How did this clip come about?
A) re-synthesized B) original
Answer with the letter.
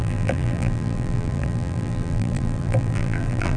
A